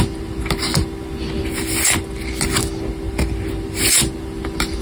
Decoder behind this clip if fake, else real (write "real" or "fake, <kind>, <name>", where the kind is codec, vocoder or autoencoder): real